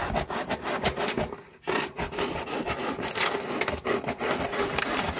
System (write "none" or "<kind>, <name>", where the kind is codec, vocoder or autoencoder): none